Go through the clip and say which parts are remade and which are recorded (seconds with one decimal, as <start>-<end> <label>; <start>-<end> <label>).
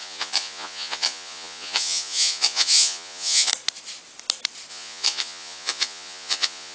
0.0-3.5 remade; 3.5-4.7 recorded; 4.7-6.7 remade